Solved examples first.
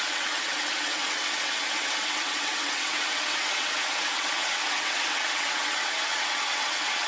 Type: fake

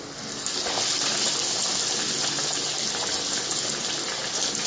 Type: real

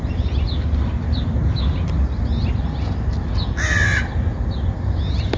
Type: real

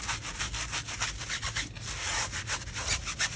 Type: real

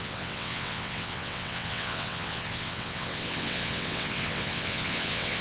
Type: fake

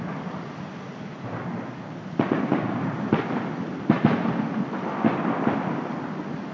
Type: real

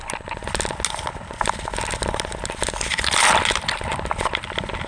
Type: real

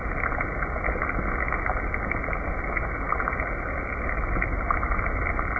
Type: real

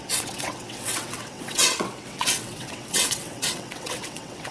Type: fake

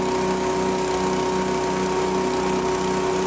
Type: real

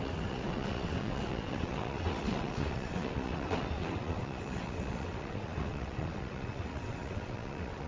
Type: fake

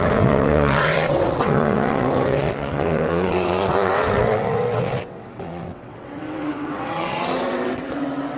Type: fake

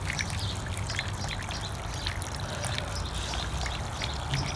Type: real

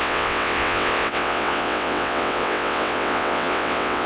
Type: fake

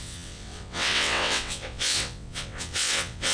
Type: fake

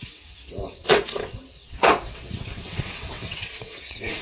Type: fake